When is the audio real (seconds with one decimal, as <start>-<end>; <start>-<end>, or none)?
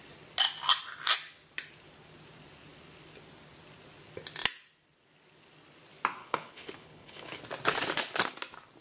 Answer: 0.0-6.2; 7.4-8.8